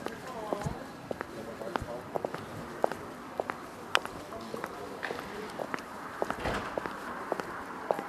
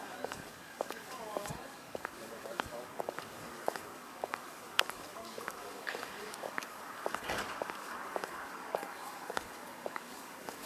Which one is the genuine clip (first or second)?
first